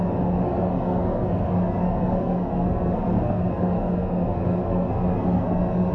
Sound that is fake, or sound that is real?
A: fake